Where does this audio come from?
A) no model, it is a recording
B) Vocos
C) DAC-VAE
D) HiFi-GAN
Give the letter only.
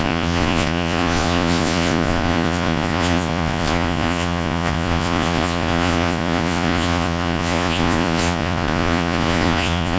B